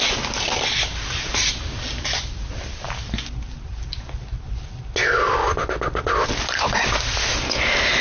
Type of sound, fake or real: real